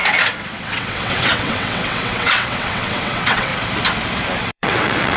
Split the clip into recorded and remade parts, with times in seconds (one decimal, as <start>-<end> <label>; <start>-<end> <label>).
0.0-3.5 remade; 3.5-4.4 recorded; 4.4-5.2 remade